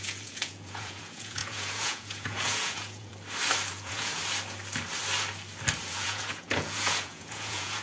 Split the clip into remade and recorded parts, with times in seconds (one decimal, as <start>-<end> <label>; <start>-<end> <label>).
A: 0.0-3.1 remade; 3.1-3.7 recorded; 3.7-4.2 remade; 4.2-5.9 recorded; 5.9-7.8 remade